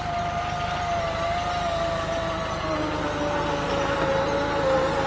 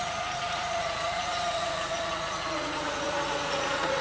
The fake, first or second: second